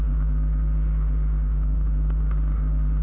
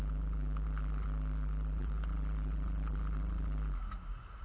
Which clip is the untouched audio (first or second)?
second